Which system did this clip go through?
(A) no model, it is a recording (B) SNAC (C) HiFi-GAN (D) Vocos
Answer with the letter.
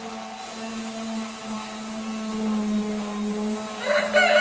A